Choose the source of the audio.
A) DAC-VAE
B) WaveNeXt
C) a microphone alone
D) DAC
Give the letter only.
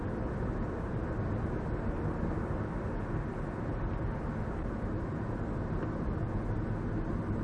C